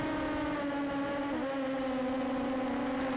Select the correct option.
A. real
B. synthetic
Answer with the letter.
A